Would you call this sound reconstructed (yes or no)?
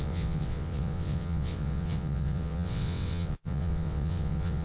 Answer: yes